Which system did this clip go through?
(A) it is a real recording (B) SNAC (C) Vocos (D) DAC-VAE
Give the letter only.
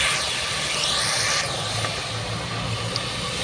A